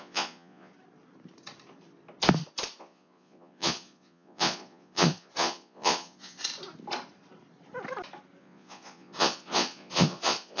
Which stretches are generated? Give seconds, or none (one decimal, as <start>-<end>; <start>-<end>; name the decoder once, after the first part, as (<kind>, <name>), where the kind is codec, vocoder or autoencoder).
0.0-0.7 (vocoder, Vocos); 2.8-6.4; 8.4-10.6